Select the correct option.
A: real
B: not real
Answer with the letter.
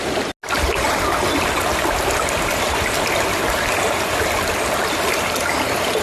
A